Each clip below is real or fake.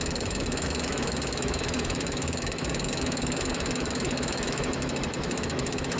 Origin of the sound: fake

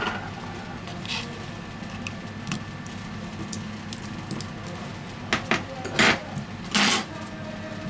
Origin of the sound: real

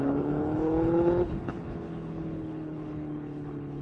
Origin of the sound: fake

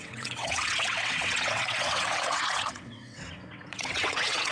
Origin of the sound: fake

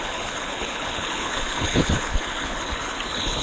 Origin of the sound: fake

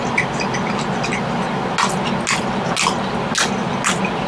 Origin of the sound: real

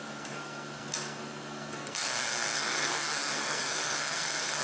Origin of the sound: fake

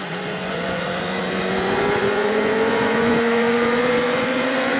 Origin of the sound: fake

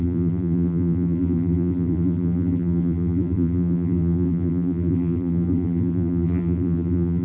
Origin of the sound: fake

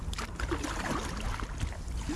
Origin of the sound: real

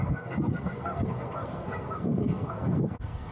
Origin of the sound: fake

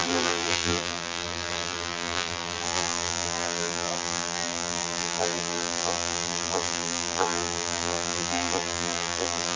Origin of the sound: fake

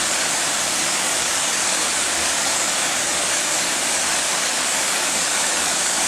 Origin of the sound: fake